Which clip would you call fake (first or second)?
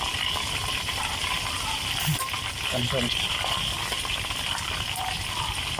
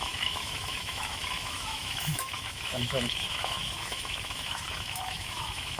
second